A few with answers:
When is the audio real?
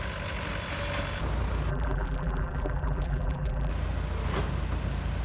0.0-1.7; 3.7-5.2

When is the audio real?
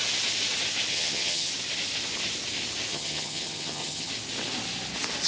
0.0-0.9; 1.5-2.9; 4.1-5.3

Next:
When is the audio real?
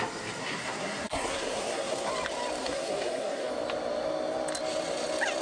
0.0-0.4; 2.1-2.6; 3.5-5.4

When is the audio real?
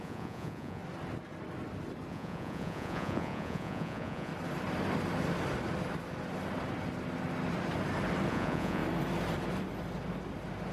0.8-2.1; 4.3-8.3; 8.8-10.7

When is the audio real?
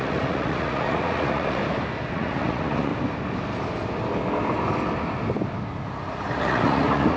1.6-2.1; 2.9-6.4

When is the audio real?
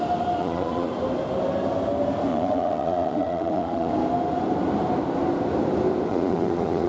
0.0-0.4; 0.9-2.3; 3.9-6.1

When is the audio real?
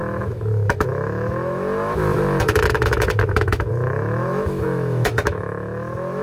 none